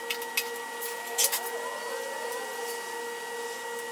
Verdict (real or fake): real